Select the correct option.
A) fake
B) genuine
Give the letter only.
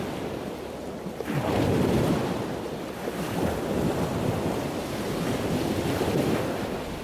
B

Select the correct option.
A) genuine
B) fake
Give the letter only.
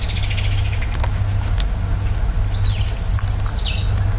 A